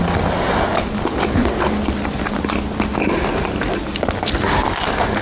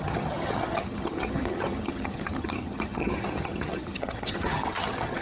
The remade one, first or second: second